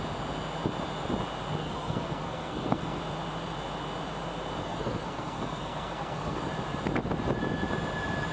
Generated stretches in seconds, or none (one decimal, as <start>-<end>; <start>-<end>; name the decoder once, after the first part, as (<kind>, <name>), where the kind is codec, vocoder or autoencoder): 1.6-3.0 (codec, SNAC); 4.6-6.4